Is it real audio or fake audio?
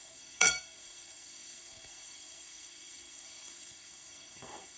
fake